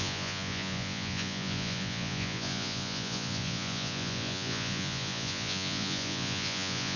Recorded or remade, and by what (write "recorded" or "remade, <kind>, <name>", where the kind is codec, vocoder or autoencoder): remade, vocoder, Vocos